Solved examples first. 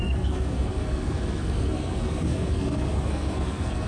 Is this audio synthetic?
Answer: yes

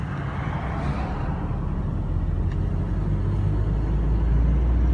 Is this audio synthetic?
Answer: no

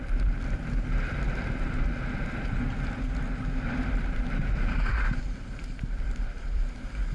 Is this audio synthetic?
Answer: no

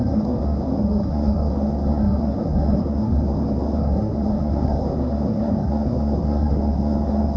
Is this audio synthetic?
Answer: yes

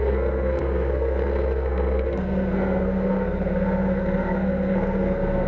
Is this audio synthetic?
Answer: yes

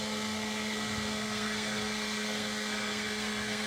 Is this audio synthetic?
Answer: yes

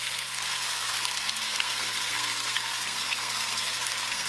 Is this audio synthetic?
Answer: yes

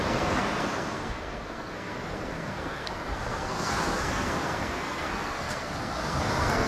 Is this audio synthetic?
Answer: yes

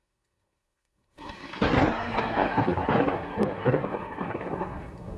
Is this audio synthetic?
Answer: yes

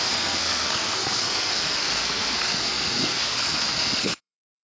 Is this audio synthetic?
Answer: yes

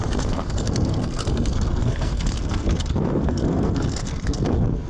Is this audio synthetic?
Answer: yes